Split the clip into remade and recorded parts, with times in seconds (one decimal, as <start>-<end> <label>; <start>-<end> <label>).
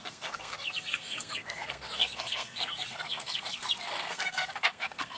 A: 0.0-5.2 remade